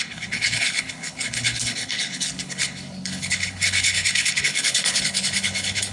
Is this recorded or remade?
remade